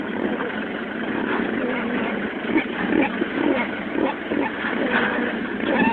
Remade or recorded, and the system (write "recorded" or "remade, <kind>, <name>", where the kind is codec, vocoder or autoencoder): recorded